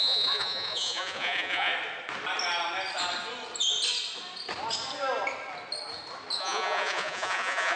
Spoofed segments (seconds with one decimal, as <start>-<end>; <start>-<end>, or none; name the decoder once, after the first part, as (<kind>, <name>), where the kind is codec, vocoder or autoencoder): 0.0-1.7 (vocoder, Vocos); 6.4-7.8

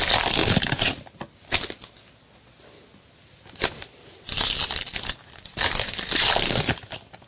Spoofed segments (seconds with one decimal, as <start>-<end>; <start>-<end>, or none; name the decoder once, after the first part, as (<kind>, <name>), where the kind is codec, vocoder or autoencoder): none

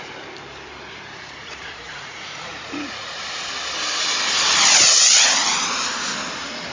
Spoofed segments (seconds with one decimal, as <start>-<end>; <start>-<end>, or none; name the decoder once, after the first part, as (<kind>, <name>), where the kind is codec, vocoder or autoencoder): 1.4-3.1 (vocoder, Vocos)

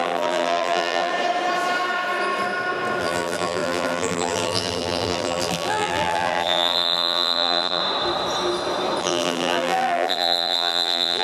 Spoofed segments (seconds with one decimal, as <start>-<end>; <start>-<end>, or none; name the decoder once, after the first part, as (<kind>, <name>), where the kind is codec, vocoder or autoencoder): 0.0-1.1 (vocoder, BigVGAN v2); 3.0-7.8; 9.0-11.2

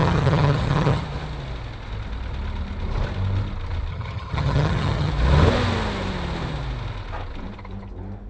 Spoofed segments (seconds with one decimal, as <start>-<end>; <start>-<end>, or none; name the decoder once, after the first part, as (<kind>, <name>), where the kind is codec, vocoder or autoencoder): 0.0-1.0 (vocoder, HiFi-GAN); 3.9-5.1

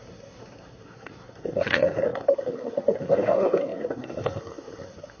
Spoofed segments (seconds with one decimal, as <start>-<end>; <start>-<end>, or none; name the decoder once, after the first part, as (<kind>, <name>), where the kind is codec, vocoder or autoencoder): 0.0-5.2 (codec, SNAC)